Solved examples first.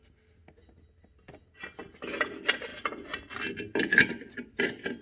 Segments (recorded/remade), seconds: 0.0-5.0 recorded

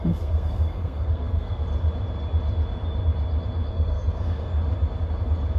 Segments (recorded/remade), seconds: 0.0-1.6 remade; 1.6-3.7 recorded; 3.7-4.5 remade; 4.5-5.6 recorded

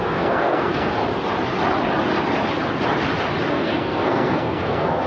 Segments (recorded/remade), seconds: 0.0-1.0 remade; 1.0-3.5 recorded; 3.5-5.1 remade

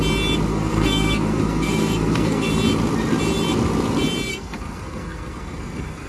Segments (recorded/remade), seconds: 0.0-0.5 recorded; 0.5-2.5 remade; 2.5-4.3 recorded; 4.3-6.1 remade

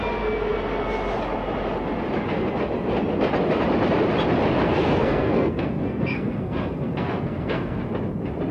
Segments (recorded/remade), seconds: 0.0-4.6 recorded; 4.6-7.8 remade; 7.8-8.5 recorded